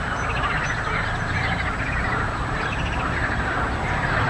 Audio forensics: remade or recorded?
recorded